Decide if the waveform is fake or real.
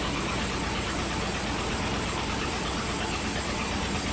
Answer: real